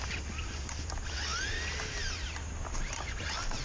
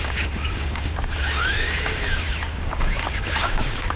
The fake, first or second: second